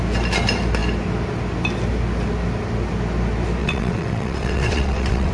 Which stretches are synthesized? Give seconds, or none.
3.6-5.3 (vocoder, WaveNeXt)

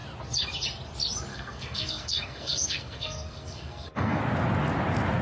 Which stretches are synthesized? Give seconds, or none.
1.3-4.2 (codec, SNAC)

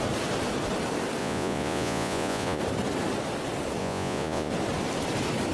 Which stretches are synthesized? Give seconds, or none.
1.2-2.6 (vocoder, Vocos); 3.8-4.5

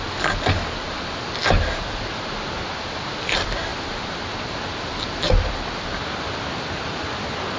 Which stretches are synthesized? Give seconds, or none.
none

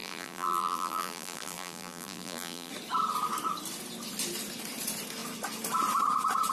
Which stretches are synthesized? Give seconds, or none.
0.0-2.7 (vocoder, BigVGAN v2)